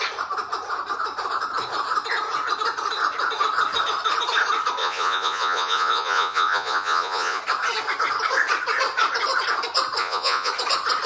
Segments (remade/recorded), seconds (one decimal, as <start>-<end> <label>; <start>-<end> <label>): 0.0-4.8 recorded; 4.8-7.4 remade; 7.4-10.0 recorded; 10.0-10.5 remade; 10.5-11.1 recorded